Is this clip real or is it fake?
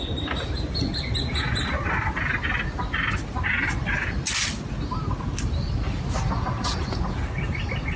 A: real